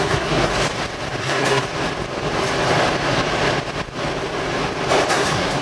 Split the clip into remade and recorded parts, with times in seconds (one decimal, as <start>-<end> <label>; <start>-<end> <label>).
0.0-0.5 remade; 0.5-1.2 recorded; 1.2-1.7 remade; 1.7-5.1 recorded; 5.1-5.6 remade